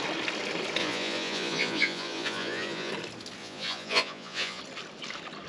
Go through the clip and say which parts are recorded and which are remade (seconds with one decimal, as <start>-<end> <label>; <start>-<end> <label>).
0.0-0.8 recorded; 0.8-2.9 remade; 2.9-3.4 recorded; 3.4-4.6 remade; 4.6-5.5 recorded